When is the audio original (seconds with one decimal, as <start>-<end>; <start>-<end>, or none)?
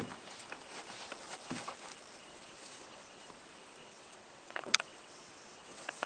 0.0-2.3; 3.3-3.8